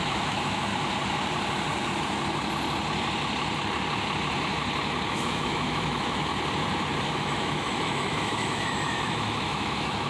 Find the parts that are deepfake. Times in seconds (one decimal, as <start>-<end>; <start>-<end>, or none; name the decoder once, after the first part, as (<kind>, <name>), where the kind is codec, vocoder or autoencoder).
0.0-0.7 (autoencoder, DAC-VAE); 5.1-6.3; 7.0-10.1